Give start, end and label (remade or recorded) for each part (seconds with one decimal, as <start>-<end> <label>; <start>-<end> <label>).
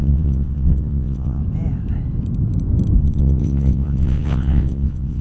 0.0-1.4 remade; 1.4-3.0 recorded; 3.0-5.2 remade